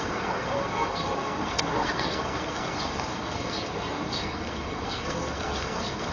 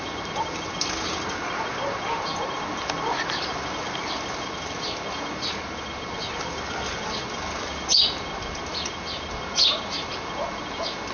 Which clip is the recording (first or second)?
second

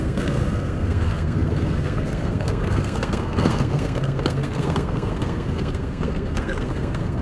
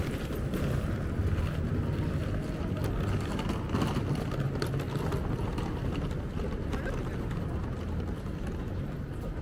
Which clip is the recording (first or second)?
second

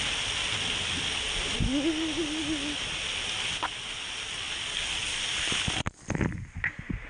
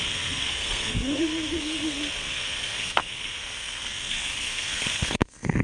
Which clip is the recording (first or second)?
first